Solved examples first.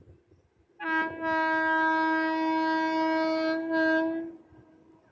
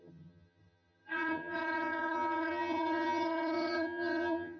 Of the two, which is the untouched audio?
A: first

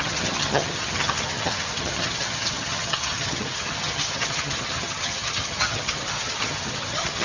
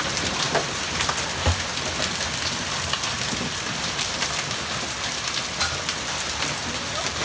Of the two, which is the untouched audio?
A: second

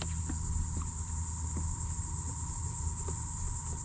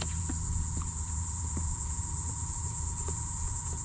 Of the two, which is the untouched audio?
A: first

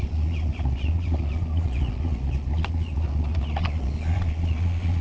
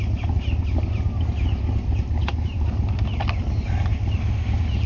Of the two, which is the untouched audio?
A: second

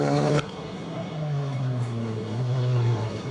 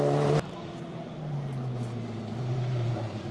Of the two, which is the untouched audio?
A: second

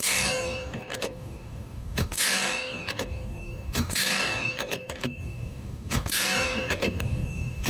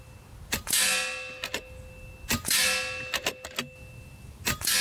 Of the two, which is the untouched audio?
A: second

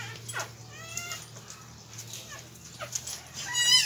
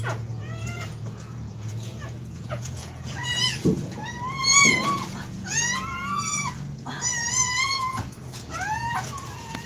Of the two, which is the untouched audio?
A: first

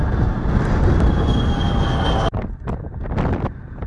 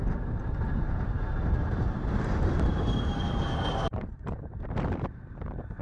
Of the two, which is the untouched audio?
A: first